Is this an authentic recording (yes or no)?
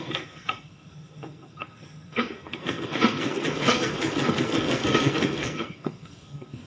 no